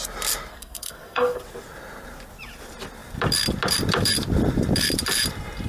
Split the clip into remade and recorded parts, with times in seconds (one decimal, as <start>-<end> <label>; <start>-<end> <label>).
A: 0.0-0.5 recorded; 0.5-1.4 remade; 1.4-5.7 recorded